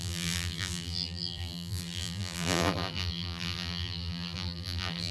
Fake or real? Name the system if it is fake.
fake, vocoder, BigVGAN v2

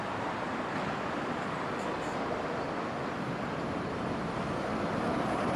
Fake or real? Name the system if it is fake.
real